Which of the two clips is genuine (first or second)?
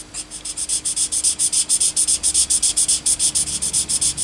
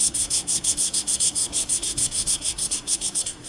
first